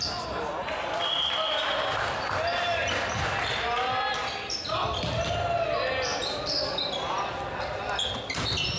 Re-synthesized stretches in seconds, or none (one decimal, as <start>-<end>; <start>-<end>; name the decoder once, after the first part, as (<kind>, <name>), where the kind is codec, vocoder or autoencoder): none